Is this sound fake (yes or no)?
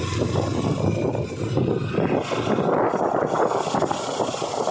no